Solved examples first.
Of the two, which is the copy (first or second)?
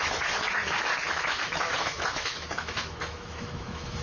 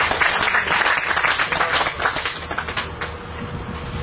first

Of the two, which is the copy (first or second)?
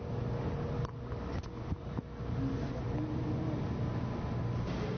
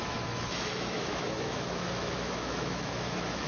second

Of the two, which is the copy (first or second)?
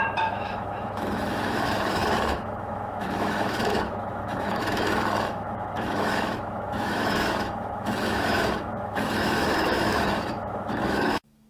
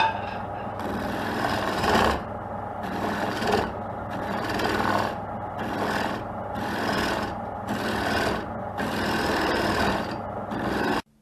first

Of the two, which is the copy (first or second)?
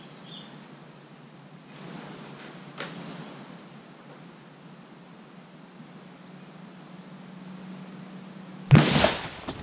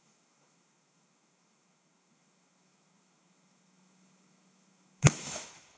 second